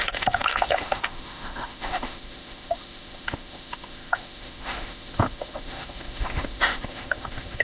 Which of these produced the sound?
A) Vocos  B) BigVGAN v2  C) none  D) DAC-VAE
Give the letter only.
D